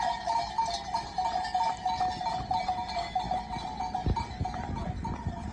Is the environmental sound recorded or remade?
recorded